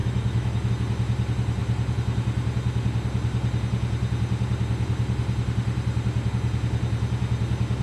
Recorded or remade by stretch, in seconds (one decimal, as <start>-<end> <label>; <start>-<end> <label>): 0.0-0.7 remade; 0.7-7.8 recorded